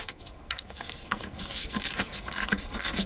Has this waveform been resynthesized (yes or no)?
yes